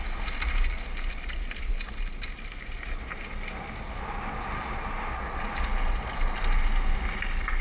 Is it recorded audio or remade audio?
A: recorded